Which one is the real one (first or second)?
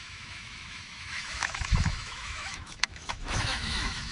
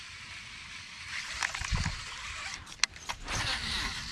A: second